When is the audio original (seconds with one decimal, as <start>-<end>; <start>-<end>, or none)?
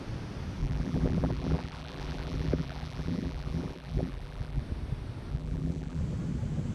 0.0-0.6; 4.6-5.3; 6.0-6.7